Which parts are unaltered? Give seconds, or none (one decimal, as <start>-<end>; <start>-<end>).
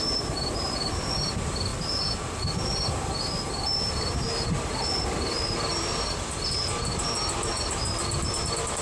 1.7-2.5